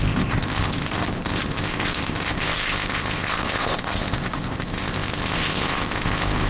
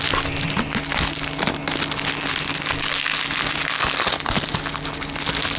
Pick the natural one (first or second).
second